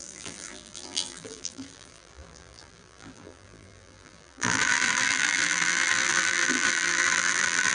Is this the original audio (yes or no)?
no